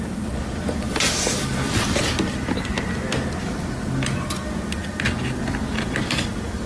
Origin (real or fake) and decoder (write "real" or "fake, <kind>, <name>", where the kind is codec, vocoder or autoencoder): real